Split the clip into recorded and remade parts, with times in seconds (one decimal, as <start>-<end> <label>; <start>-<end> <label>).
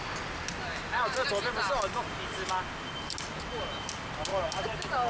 0.0-5.1 recorded